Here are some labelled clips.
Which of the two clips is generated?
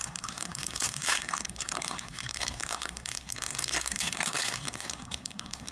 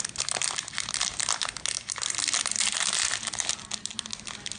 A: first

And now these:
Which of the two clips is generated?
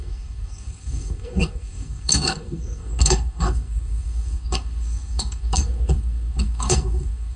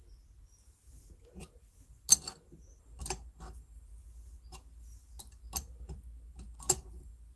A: first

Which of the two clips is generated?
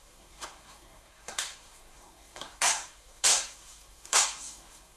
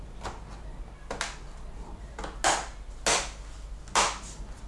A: first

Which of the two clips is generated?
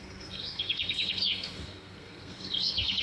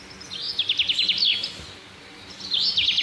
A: first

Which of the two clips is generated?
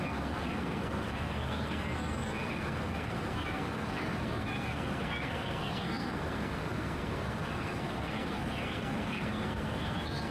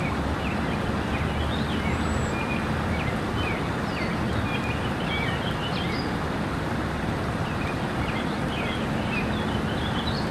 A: first